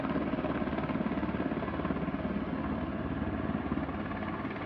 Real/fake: real